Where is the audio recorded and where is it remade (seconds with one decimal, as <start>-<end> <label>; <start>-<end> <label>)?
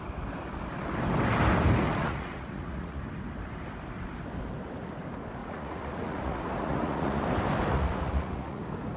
0.0-2.0 recorded; 2.0-3.0 remade; 3.0-5.4 recorded; 5.4-7.2 remade; 7.2-7.7 recorded; 7.7-8.6 remade; 8.6-9.0 recorded